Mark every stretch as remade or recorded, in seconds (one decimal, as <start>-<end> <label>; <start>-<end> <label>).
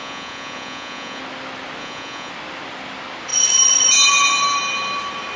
0.0-1.2 remade; 1.2-1.8 recorded; 1.8-2.3 remade; 2.3-5.4 recorded